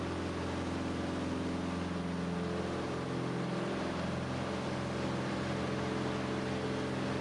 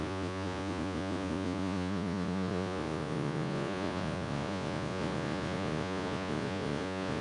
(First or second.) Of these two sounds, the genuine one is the first